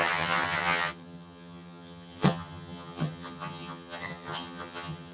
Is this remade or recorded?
remade